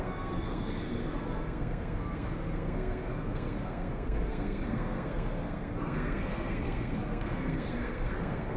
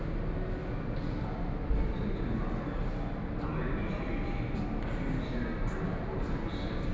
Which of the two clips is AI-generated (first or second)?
first